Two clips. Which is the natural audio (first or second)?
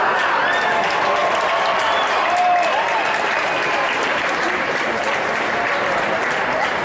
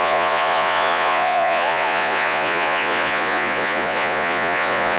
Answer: first